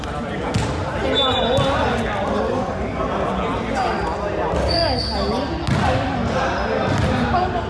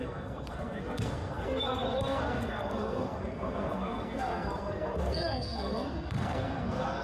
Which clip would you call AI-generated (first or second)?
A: second